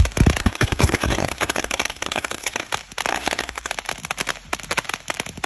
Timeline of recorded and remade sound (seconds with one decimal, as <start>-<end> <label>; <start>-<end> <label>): 0.0-0.4 recorded; 0.4-2.7 remade; 2.7-3.1 recorded; 3.1-3.7 remade; 3.7-5.5 recorded